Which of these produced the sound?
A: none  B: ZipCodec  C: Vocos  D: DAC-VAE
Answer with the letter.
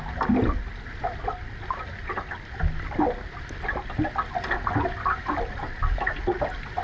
A